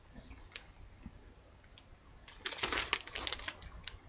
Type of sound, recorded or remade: recorded